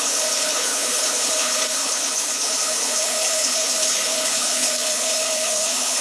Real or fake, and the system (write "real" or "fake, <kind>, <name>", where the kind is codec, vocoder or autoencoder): fake, codec, HILCodec